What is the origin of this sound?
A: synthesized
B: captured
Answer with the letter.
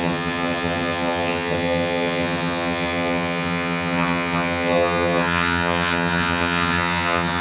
A